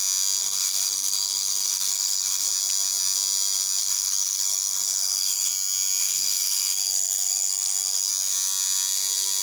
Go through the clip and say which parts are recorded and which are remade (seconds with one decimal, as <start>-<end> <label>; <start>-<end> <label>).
0.0-0.4 recorded; 0.4-2.5 remade; 2.5-3.8 recorded; 3.8-5.5 remade; 5.5-6.0 recorded; 6.0-8.1 remade; 8.1-9.4 recorded